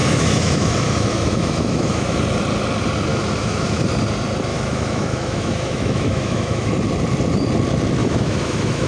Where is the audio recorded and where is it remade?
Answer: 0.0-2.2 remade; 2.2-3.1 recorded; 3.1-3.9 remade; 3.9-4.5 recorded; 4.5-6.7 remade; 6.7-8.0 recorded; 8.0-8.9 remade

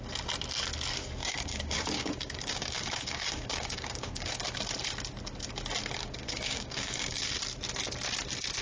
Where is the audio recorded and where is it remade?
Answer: 0.0-1.2 recorded; 1.2-4.4 remade; 4.4-6.0 recorded; 6.0-7.4 remade; 7.4-8.6 recorded

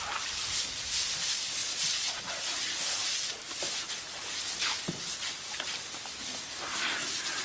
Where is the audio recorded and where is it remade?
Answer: 0.0-1.6 recorded; 1.6-2.2 remade; 2.2-7.4 recorded

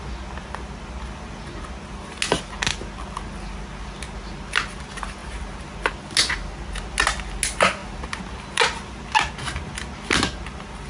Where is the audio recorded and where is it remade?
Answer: 0.0-10.9 recorded

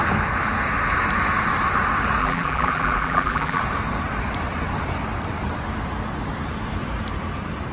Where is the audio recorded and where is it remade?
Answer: 0.0-2.2 recorded; 2.2-3.6 remade; 3.6-7.7 recorded